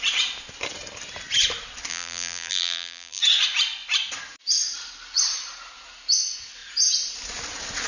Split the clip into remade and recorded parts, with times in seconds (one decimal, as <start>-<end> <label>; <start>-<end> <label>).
0.0-1.9 recorded; 1.9-3.2 remade; 3.2-7.9 recorded